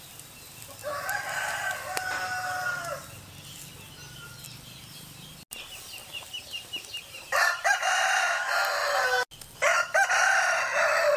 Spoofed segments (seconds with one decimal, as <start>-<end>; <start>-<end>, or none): 6.0-8.1